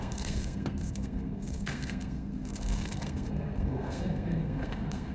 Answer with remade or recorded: remade